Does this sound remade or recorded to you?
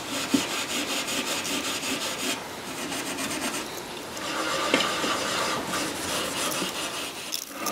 recorded